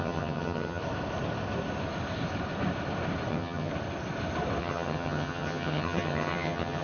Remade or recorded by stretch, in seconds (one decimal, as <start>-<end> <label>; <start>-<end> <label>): 0.0-0.8 remade; 0.8-3.3 recorded; 3.3-3.7 remade; 3.7-4.6 recorded; 4.6-6.8 remade